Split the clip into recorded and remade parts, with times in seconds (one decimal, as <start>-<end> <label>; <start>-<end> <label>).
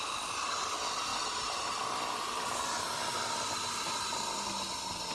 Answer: 0.0-5.1 recorded